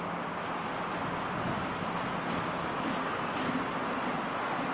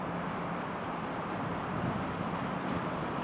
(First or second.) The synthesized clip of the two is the second